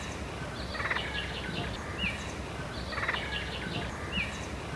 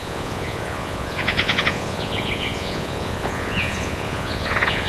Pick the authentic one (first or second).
first